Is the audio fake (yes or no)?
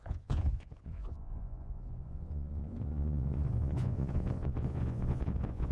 yes